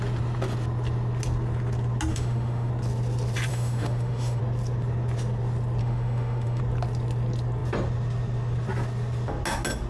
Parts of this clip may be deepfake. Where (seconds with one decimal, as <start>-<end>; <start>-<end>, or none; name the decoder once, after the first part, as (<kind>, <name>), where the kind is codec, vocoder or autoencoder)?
2.1-2.7 (autoencoder, DAC-VAE); 3.5-4.4; 5.8-6.6